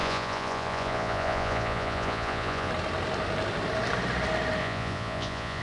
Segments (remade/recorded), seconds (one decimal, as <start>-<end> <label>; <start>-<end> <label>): 0.0-2.7 remade; 2.7-4.6 recorded; 4.6-5.6 remade